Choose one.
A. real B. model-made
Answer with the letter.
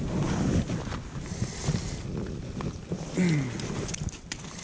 A